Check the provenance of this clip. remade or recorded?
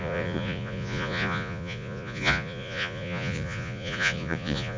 remade